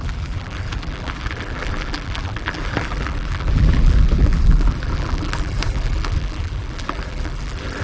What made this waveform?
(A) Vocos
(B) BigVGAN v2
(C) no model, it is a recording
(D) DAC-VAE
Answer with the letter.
B